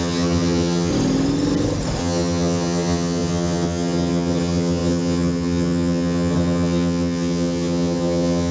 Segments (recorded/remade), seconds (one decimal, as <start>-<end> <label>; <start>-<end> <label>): 0.0-0.9 remade; 0.9-2.0 recorded; 2.0-8.5 remade